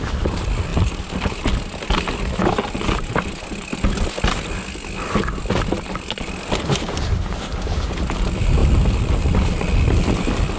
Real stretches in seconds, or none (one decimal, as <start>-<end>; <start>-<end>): 0.0-10.6